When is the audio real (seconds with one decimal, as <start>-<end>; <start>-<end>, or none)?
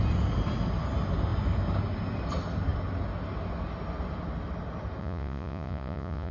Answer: 0.0-5.0